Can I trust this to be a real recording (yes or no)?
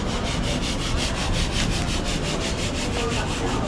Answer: yes